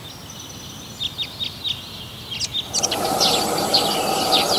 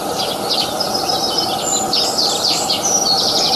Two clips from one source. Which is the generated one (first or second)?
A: second